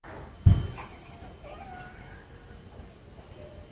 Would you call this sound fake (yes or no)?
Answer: no